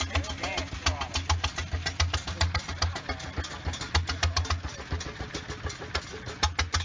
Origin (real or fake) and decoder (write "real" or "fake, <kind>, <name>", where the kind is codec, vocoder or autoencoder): real